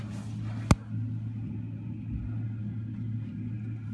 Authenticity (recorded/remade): recorded